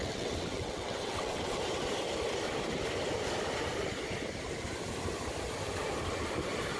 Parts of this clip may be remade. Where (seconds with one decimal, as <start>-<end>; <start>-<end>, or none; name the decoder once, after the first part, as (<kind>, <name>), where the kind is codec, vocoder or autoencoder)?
0.0-1.6 (vocoder, WaveNeXt)